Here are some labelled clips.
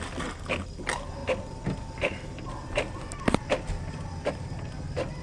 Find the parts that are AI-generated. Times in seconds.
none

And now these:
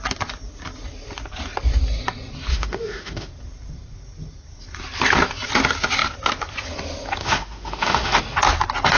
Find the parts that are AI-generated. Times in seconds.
2.5-3.3; 7.2-8.2